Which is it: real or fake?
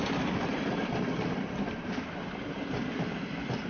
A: real